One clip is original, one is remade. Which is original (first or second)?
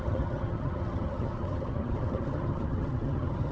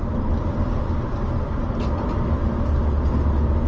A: second